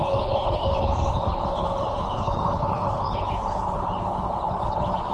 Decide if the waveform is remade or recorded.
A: remade